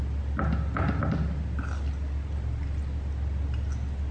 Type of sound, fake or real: real